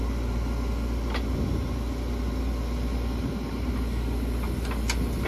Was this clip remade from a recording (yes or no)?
no